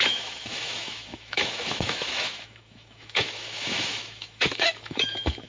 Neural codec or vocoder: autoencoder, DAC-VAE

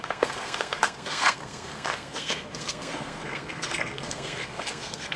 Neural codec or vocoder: codec, SNAC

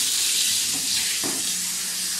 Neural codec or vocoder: none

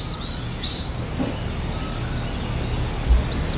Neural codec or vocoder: none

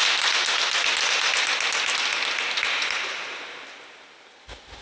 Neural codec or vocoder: none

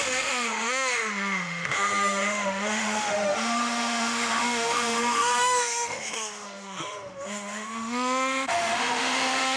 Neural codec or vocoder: autoencoder, DAC-VAE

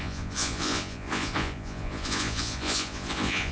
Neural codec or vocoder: vocoder, Vocos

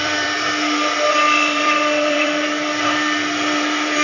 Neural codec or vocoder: vocoder, BigVGAN v2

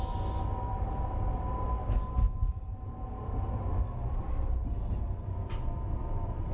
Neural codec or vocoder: none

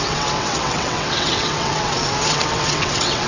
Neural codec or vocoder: vocoder, WaveNeXt